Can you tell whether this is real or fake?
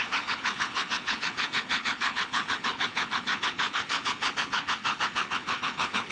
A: fake